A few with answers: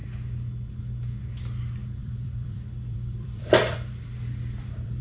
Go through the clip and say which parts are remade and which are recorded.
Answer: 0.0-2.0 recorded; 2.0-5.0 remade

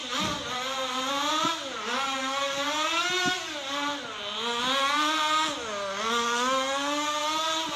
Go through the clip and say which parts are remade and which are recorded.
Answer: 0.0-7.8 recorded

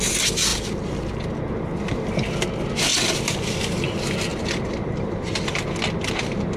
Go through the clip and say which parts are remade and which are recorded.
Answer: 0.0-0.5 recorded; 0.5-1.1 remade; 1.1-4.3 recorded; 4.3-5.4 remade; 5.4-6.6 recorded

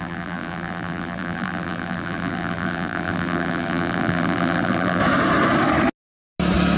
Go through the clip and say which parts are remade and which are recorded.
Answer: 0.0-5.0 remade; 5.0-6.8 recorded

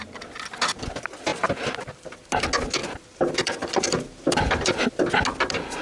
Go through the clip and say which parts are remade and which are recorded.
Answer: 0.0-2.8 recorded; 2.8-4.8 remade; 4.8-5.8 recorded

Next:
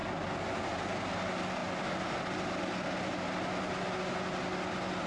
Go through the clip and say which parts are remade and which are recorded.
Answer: 0.0-5.1 recorded

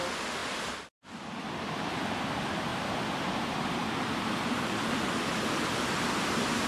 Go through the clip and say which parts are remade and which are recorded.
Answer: 0.0-0.4 recorded; 0.4-2.0 remade; 2.0-2.7 recorded; 2.7-5.1 remade; 5.1-6.7 recorded

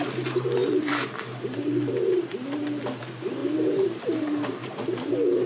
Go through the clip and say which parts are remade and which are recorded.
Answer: 0.0-0.6 recorded; 0.6-1.9 remade; 1.9-3.4 recorded; 3.4-5.1 remade; 5.1-5.5 recorded